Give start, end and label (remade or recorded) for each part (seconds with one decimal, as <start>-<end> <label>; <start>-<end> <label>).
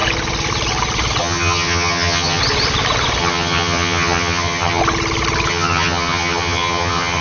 0.0-1.2 recorded; 1.2-2.4 remade; 2.4-3.2 recorded; 3.2-4.8 remade; 4.8-5.5 recorded; 5.5-7.2 remade